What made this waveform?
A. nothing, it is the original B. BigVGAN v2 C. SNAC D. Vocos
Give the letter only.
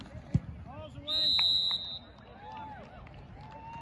A